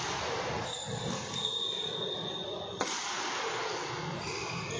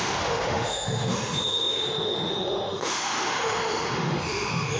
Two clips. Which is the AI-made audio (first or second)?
second